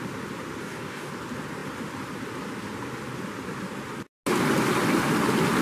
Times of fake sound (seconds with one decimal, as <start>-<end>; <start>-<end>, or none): 0.6-1.1